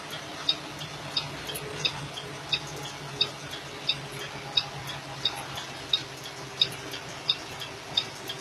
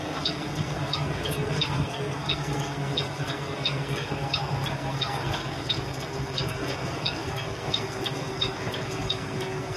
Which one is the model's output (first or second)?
second